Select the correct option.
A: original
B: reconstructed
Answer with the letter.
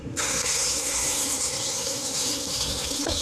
B